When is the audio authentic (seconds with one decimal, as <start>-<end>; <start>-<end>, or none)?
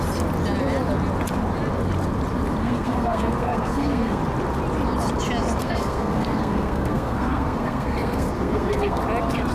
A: 0.0-2.6; 4.2-5.6; 9.0-9.5